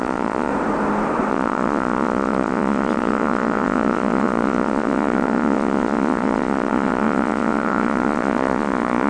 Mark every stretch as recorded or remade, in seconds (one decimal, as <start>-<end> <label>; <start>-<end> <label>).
0.0-0.5 remade; 0.5-1.3 recorded; 1.3-9.1 remade